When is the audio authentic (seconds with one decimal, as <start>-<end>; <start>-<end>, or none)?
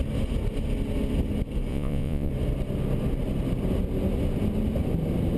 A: 0.0-1.7; 2.3-5.4